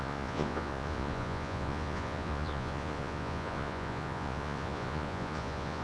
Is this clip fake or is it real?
fake